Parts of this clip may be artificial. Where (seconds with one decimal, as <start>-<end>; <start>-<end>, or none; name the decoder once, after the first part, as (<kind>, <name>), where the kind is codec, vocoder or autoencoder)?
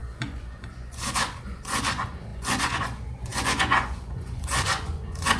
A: 0.0-5.4 (vocoder, Vocos)